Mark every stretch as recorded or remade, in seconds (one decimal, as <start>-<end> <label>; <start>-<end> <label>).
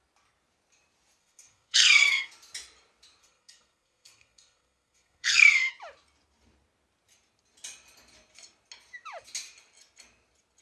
0.0-1.2 recorded; 1.2-2.3 remade; 2.3-3.2 recorded; 3.2-5.7 remade; 5.7-10.6 recorded